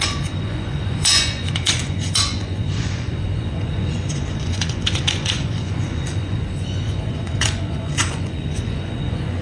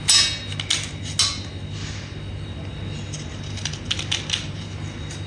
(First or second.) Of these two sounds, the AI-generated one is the first